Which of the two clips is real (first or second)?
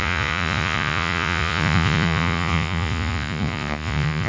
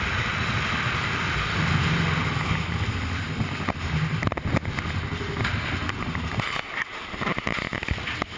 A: second